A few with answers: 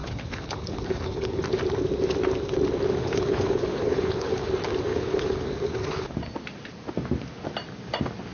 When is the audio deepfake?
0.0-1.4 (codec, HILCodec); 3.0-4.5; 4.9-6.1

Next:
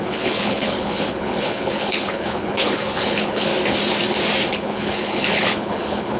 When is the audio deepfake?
0.0-3.5 (codec, HILCodec); 4.5-6.2